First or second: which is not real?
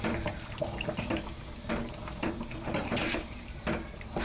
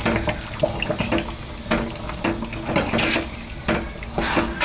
first